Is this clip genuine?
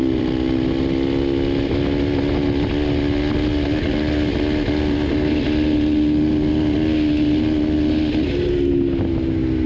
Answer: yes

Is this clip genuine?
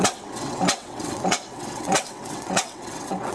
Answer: no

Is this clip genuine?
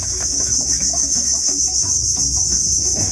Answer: no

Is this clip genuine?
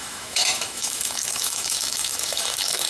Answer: no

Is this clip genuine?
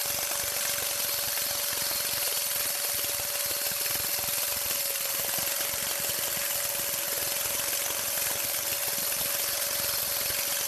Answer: yes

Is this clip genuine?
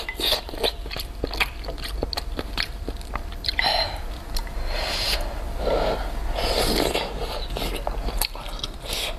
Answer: no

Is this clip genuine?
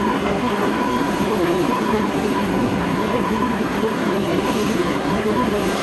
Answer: no